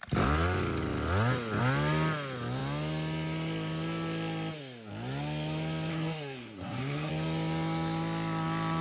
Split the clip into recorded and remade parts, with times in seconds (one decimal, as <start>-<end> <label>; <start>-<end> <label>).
0.0-5.9 recorded; 5.9-7.1 remade; 7.1-8.8 recorded